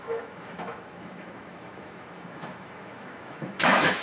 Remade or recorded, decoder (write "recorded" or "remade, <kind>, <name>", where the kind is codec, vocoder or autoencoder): remade, autoencoder, DAC-VAE